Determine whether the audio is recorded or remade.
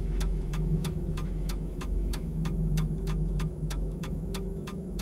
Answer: remade